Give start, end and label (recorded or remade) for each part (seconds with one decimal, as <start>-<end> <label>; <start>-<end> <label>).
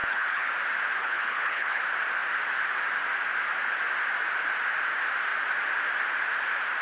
0.0-0.5 remade; 0.5-1.0 recorded; 1.0-1.8 remade; 1.8-6.8 recorded